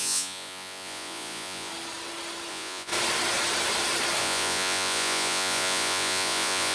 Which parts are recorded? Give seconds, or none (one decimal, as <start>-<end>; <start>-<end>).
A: 1.7-2.5; 2.9-4.2

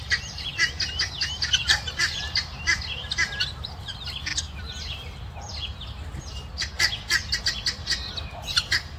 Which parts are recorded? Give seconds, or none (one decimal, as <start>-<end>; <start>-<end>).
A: 0.5-1.5; 4.3-7.4

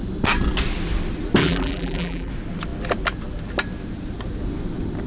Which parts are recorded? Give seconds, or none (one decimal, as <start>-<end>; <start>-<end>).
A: 0.0-1.4; 2.3-5.1

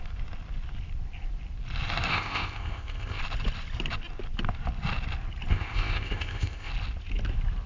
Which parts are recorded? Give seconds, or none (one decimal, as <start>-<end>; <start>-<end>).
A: 0.0-2.1; 3.2-5.5; 6.7-7.7